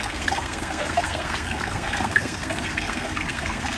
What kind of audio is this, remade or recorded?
remade